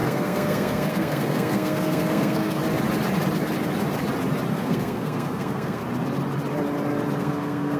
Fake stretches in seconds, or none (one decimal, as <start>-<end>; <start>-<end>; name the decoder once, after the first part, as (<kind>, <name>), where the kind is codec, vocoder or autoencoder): 0.0-2.6 (codec, SNAC); 4.5-5.8; 7.2-7.8